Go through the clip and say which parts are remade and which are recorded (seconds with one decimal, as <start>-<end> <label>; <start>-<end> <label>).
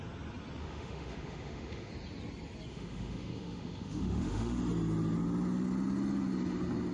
0.0-0.6 recorded; 0.6-1.9 remade; 1.9-2.7 recorded; 2.7-4.6 remade; 4.6-6.9 recorded